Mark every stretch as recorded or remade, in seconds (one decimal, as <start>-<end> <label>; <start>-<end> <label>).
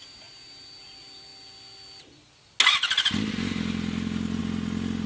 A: 0.0-5.1 recorded